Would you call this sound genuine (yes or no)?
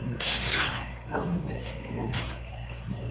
no